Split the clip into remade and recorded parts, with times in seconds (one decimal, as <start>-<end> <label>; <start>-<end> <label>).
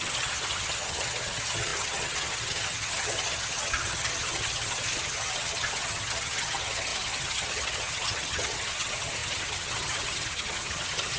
0.0-11.2 remade